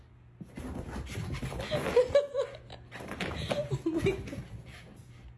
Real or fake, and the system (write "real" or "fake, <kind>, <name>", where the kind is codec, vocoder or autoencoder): real